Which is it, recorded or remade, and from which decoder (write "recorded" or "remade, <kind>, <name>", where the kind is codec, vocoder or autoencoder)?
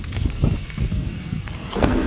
remade, codec, SNAC